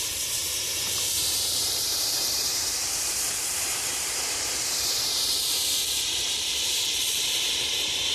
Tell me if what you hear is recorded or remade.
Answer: remade